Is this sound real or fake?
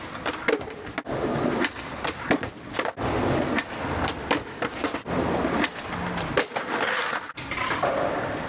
real